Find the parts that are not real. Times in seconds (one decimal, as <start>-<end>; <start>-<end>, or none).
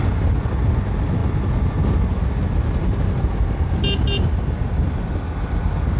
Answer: none